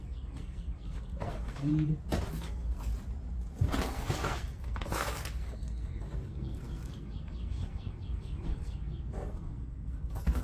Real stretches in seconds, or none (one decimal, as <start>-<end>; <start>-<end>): 1.7-2.3; 2.9-3.5